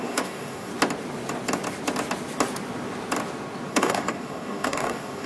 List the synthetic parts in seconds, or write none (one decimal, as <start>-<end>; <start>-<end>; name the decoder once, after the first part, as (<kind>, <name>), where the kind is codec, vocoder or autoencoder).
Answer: 0.0-0.7 (codec, DAC); 3.7-5.3